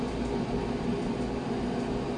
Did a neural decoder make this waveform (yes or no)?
no